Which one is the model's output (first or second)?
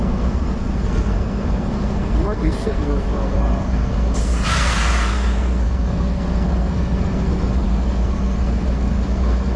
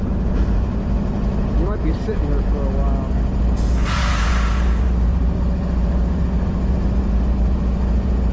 first